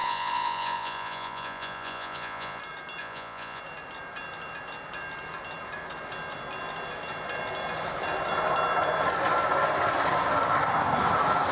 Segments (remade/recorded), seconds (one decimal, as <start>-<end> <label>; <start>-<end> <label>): 0.0-2.6 remade; 2.6-3.0 recorded; 3.0-3.6 remade; 3.6-11.5 recorded